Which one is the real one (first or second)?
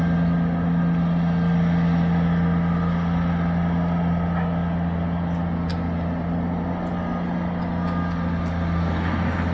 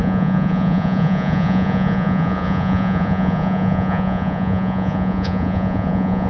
first